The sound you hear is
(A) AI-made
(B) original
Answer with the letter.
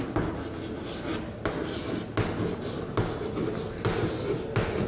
B